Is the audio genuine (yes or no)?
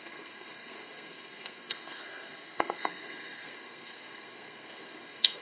no